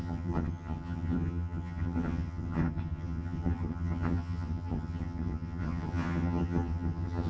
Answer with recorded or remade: remade